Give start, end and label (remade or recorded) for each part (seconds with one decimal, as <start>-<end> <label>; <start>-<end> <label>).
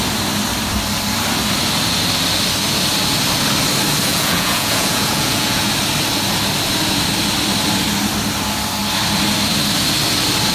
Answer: 0.0-4.1 recorded; 4.1-5.6 remade; 5.6-10.5 recorded